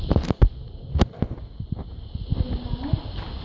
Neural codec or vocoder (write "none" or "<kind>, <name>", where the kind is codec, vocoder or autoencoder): none